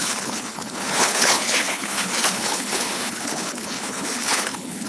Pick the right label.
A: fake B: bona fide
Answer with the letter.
A